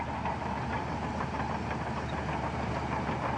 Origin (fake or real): real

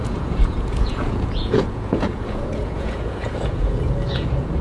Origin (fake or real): fake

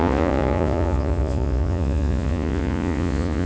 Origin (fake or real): fake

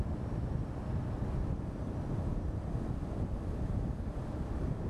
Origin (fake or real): real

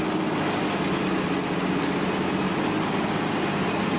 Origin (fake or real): real